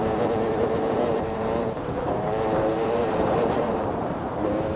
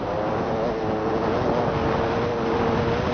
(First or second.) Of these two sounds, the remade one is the first